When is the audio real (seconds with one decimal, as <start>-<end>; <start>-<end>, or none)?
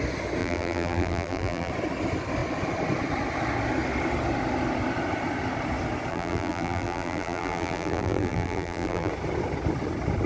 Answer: 0.0-0.4; 1.7-6.1; 9.1-10.3